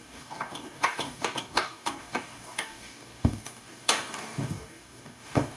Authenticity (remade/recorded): remade